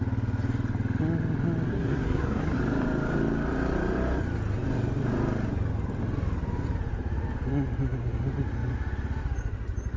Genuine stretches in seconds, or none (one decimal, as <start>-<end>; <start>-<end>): 0.0-1.7; 2.6-10.0

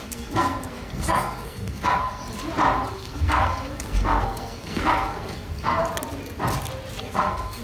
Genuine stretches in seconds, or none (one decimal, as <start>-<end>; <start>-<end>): 2.2-2.9; 5.8-7.0